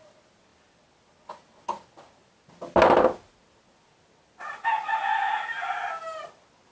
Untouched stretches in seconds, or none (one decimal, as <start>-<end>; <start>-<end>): 0.0-6.7

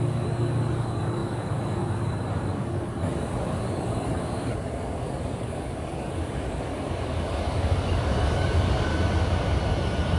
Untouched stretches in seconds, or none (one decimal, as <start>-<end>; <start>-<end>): 8.9-10.2